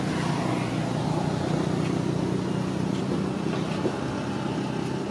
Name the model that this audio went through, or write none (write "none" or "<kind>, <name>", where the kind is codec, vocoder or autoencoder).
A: none